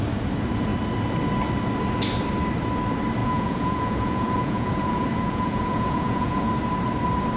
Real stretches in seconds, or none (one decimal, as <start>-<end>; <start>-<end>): 0.0-3.2; 6.5-7.4